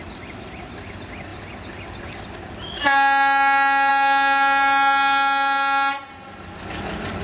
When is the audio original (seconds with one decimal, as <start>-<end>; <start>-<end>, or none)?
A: 0.0-7.2